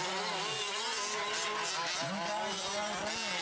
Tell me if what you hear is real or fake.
real